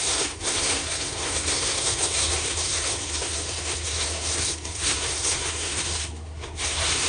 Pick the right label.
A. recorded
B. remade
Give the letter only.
B